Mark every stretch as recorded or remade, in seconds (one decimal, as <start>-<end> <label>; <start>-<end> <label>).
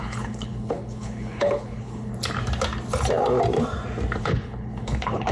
0.0-2.1 remade; 2.1-4.2 recorded; 4.2-5.3 remade